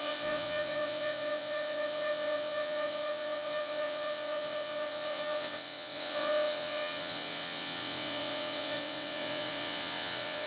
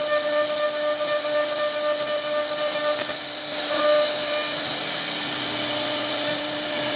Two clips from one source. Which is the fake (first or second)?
first